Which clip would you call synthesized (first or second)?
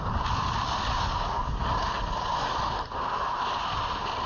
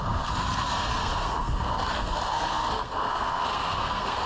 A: second